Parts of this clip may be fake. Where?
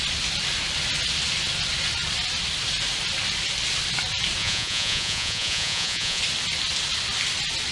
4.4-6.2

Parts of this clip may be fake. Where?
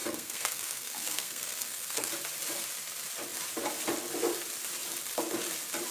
0.0-2.1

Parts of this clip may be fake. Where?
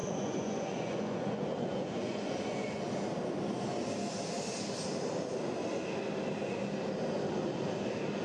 0.0-2.8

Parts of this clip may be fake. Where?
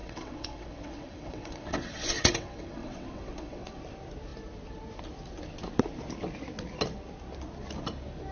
0.0-3.8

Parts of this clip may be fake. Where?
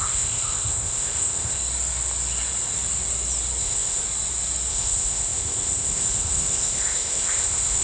0.0-1.6; 3.6-4.0; 4.7-7.8